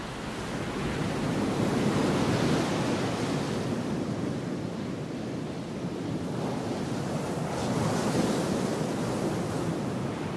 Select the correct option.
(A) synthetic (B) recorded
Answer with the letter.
B